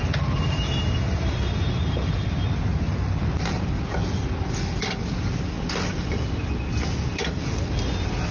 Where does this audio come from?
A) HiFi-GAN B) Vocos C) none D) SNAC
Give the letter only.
C